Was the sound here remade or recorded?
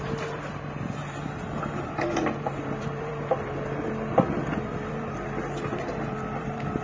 remade